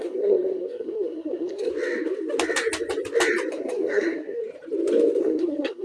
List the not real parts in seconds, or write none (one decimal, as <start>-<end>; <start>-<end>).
0.0-1.7; 3.5-4.4; 5.2-5.8